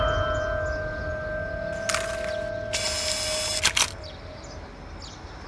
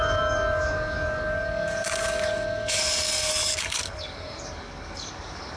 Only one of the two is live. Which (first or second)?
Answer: first